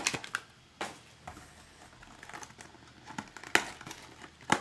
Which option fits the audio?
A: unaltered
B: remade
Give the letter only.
A